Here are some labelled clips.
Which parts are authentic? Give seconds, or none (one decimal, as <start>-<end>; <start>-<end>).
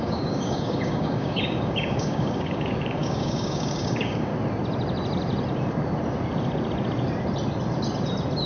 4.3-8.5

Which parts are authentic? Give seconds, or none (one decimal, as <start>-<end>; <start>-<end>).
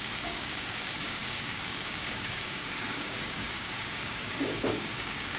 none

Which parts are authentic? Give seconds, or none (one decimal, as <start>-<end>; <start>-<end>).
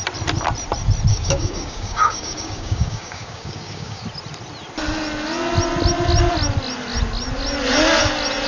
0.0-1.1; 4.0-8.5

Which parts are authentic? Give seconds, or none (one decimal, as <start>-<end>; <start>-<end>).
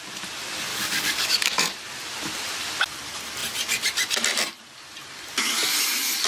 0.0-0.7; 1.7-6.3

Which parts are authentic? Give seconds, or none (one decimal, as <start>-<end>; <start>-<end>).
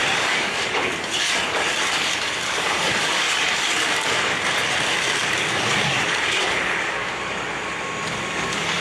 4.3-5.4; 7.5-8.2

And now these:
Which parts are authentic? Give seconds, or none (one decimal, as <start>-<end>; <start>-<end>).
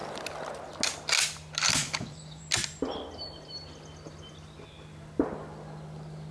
0.0-1.7; 2.4-6.3